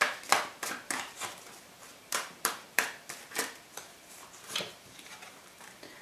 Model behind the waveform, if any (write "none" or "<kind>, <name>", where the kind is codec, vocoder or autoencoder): vocoder, BigVGAN v2